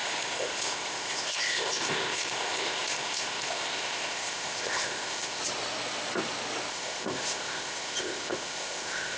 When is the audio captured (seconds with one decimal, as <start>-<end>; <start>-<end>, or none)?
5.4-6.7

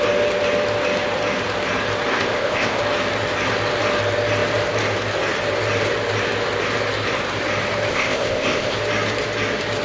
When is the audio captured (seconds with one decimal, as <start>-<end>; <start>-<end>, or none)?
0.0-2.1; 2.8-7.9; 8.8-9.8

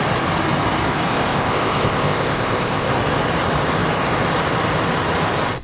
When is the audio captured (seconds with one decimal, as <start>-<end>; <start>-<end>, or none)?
0.0-1.1; 2.9-5.6

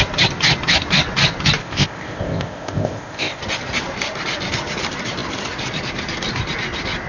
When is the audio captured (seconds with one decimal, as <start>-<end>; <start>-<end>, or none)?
0.0-1.6; 3.4-7.1

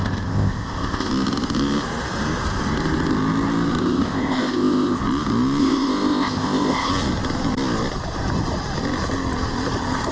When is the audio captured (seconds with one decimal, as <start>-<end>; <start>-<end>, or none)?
1.1-3.8; 5.0-5.6; 6.9-10.1

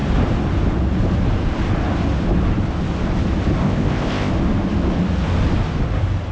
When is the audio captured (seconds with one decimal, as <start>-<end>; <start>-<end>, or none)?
0.0-3.6; 4.3-6.3

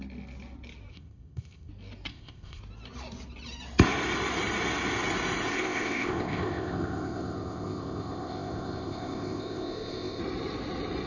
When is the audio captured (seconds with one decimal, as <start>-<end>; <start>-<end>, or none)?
0.0-0.9; 1.7-2.1; 2.6-5.5; 10.2-11.1